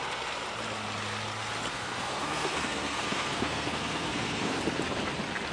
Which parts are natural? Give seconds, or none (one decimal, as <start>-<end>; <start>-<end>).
0.0-1.7; 4.6-5.5